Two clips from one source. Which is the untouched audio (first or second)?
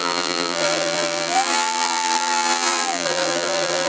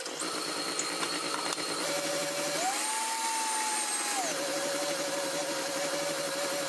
second